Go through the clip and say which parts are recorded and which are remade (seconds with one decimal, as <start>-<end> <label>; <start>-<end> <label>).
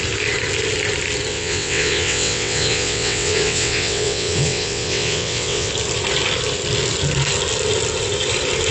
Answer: 0.0-1.3 recorded; 1.3-5.7 remade; 5.7-8.7 recorded